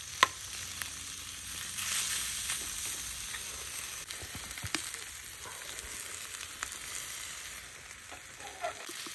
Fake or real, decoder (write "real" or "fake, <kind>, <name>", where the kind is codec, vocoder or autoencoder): real